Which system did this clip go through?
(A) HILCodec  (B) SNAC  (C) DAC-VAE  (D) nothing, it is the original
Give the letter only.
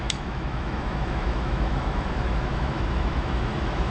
C